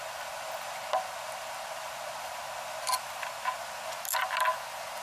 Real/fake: real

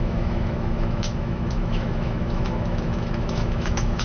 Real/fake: fake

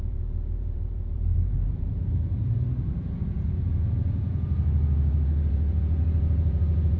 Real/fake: fake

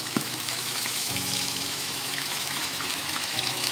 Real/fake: fake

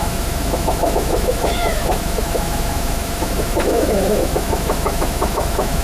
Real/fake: fake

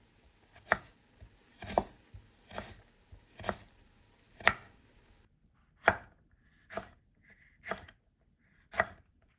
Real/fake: real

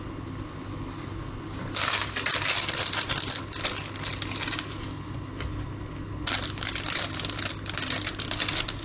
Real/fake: real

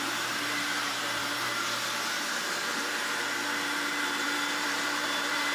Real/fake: fake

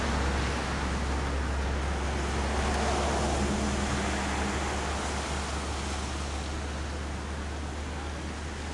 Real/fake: real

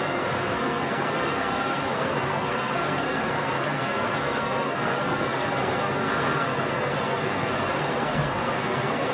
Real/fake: fake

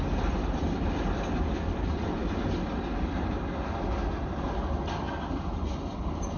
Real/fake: real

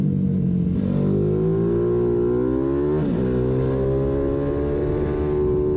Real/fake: real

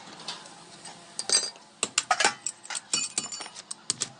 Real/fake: real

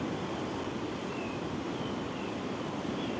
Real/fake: real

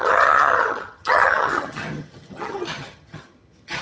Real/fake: fake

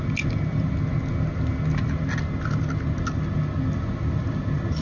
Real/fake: real